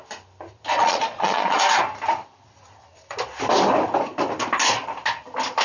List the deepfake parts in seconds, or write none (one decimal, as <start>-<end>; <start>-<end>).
0.7-1.6